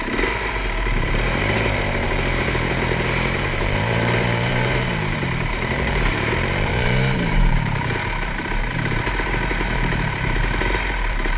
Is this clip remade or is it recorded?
remade